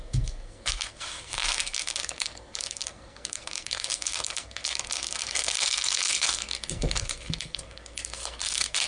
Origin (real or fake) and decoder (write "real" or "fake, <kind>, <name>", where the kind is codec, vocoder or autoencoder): fake, codec, SNAC